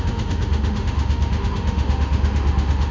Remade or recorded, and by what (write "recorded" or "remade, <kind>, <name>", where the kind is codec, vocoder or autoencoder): remade, autoencoder, DAC-VAE